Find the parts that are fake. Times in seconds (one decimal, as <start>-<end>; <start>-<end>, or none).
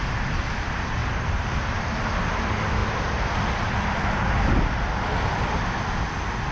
1.0-1.9